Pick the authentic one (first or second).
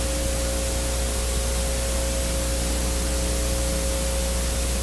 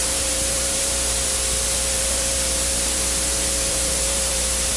first